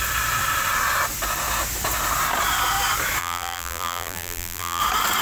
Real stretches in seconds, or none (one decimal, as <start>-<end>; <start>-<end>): 0.0-3.2; 4.8-5.2